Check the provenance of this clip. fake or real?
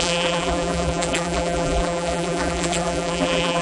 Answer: fake